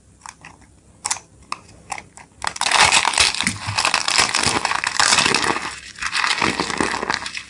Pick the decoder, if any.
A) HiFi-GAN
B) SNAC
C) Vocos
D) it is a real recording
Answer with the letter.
D